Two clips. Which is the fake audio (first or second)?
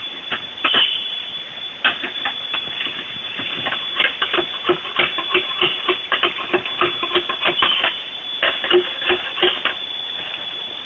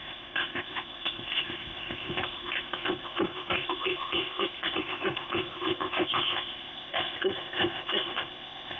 second